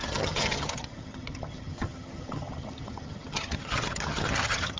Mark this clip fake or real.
fake